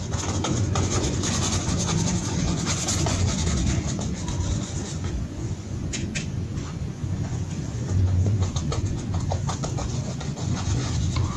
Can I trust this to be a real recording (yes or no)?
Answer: no